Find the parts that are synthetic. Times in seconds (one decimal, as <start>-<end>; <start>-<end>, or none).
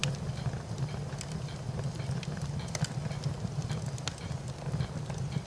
none